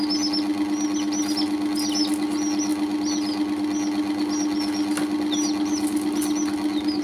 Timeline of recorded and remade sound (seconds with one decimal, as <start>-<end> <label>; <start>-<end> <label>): 0.0-7.0 recorded